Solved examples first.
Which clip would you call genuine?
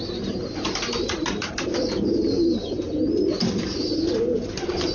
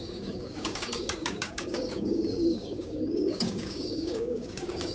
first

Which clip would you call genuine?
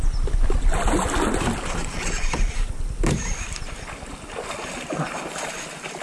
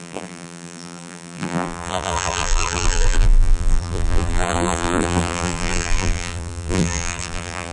first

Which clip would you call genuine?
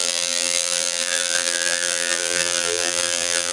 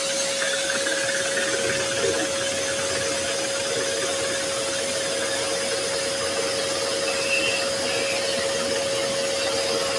second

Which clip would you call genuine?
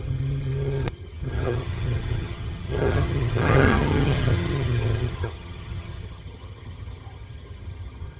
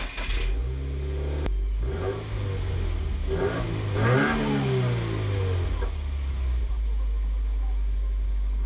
second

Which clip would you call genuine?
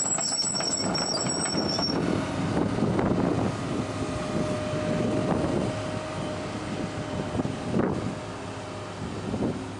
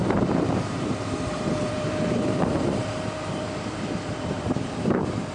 first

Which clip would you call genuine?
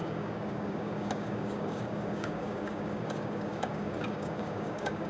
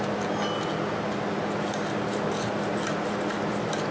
second